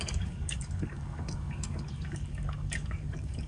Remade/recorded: remade